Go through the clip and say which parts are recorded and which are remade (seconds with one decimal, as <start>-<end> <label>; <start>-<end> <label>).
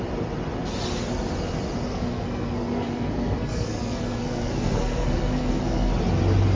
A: 0.0-1.9 recorded; 1.9-5.9 remade; 5.9-6.6 recorded